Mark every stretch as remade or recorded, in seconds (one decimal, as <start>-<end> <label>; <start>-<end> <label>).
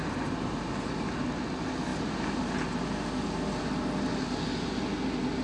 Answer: 0.0-0.9 remade; 0.9-5.4 recorded